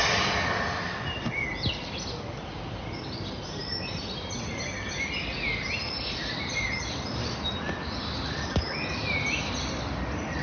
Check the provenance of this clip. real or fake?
real